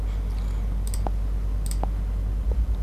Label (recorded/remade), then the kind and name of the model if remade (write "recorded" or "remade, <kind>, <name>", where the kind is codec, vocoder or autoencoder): recorded